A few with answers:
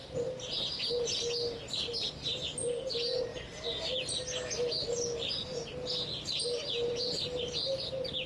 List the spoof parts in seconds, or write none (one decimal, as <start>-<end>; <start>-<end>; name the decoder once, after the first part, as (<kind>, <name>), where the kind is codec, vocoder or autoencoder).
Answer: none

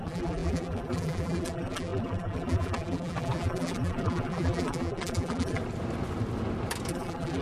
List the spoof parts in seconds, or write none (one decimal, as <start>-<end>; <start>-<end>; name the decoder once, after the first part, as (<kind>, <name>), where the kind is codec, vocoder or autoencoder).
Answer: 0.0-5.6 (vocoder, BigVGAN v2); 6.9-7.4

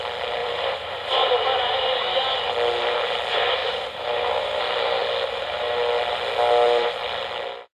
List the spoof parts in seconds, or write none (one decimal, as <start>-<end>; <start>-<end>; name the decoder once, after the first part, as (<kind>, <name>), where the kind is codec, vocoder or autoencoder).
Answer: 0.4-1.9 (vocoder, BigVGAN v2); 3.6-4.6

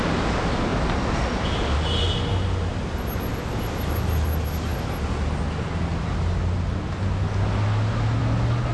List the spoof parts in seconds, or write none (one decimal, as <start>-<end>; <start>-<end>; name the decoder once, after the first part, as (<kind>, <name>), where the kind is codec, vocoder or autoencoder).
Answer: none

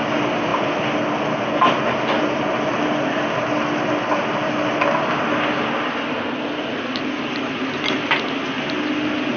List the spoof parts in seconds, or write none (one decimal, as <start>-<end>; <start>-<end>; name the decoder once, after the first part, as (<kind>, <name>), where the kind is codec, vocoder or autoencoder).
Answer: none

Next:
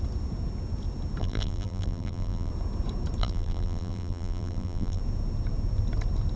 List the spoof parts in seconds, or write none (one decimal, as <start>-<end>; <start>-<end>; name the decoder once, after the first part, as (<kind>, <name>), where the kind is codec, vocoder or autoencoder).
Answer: 1.2-2.5 (vocoder, BigVGAN v2); 3.2-5.0

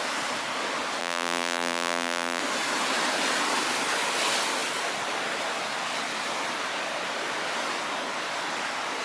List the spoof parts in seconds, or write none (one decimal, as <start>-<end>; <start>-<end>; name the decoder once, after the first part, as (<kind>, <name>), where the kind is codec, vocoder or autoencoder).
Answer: 1.0-2.4 (vocoder, BigVGAN v2)

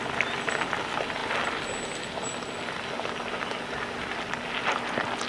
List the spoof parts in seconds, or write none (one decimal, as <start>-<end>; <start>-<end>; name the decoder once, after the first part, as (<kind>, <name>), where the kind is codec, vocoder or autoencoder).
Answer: none